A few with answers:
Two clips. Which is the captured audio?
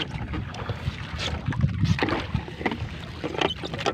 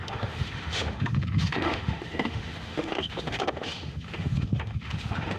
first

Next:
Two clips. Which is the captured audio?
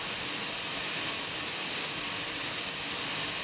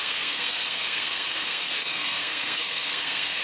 first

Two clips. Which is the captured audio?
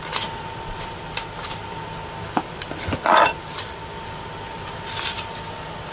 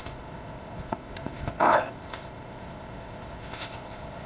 first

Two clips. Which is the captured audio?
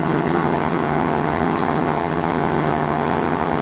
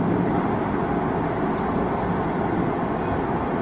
second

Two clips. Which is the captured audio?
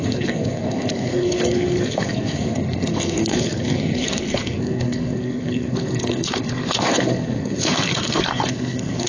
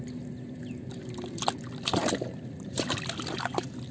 second